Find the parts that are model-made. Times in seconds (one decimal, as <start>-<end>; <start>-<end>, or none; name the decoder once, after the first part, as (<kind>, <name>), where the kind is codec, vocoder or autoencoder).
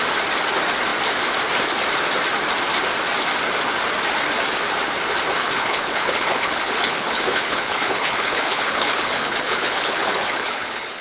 5.4-11.0 (codec, HILCodec)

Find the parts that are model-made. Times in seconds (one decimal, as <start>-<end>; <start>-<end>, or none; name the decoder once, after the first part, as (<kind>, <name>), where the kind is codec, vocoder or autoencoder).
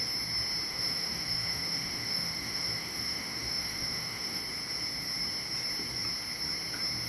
0.7-4.4 (autoencoder, DAC-VAE)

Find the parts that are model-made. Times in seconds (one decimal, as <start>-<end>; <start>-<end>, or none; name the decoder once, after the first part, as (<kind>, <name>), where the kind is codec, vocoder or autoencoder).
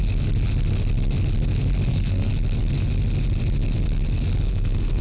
1.9-2.3 (codec, SNAC); 4.4-5.0